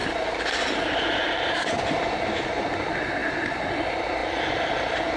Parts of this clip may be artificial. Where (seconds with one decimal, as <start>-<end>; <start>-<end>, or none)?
0.0-1.2; 3.2-3.8